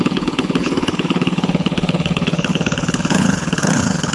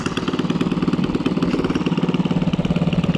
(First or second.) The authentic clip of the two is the second